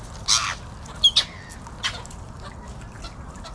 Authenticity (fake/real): real